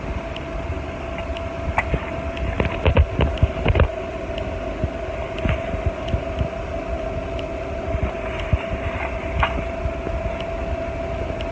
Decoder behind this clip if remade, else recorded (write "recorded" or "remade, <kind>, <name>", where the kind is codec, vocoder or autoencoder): recorded